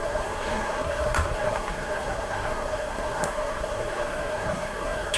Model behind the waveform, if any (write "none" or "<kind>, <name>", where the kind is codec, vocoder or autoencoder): codec, SNAC